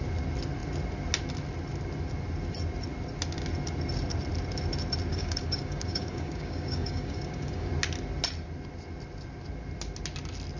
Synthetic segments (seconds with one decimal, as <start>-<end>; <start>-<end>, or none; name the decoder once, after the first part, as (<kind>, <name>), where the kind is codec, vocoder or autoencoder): 5.1-7.7 (codec, DAC)